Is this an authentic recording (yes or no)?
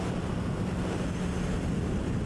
yes